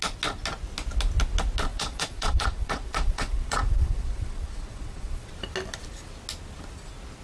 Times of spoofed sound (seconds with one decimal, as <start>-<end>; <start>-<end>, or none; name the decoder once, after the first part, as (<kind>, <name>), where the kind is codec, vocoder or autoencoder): 1.7-5.3 (vocoder, Vocos)